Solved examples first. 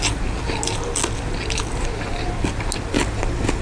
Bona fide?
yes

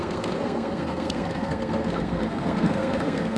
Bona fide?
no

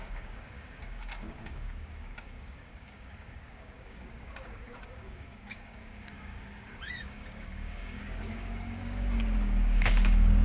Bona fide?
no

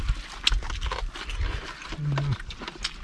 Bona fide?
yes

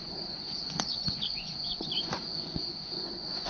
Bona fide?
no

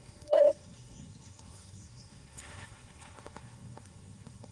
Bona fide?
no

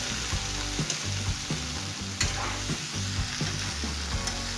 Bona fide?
yes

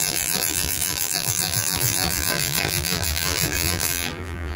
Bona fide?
no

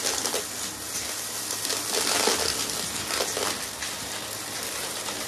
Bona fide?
yes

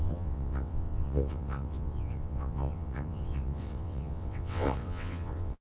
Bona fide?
no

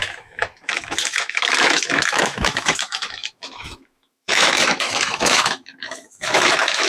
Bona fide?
no